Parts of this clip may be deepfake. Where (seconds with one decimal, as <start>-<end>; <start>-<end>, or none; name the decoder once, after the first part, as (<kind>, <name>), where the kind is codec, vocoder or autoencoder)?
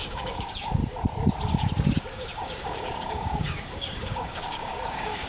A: 0.0-0.8 (codec, DAC); 2.0-5.3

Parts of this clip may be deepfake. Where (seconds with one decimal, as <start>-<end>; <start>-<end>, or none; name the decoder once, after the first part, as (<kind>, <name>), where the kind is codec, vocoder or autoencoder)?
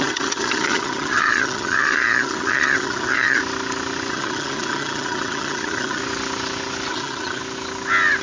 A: 0.0-3.4 (vocoder, HiFi-GAN); 4.1-6.0; 6.9-7.4